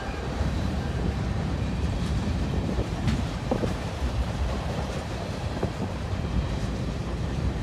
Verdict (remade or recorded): remade